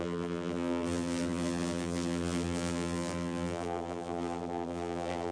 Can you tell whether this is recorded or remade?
remade